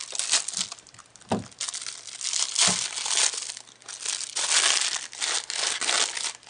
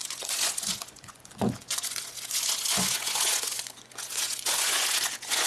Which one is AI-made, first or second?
second